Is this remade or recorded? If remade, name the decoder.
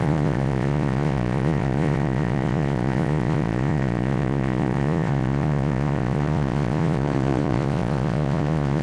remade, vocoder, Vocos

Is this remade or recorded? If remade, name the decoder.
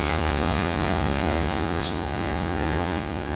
remade, vocoder, Vocos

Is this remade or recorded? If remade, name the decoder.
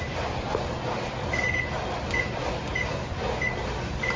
recorded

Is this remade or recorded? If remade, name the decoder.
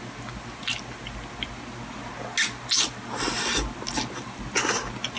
recorded